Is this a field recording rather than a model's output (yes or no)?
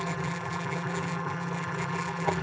no